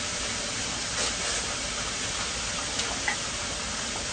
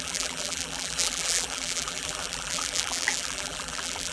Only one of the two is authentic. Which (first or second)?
first